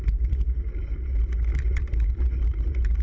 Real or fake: fake